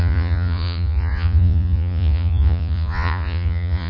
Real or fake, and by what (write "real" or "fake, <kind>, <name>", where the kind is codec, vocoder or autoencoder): fake, vocoder, Vocos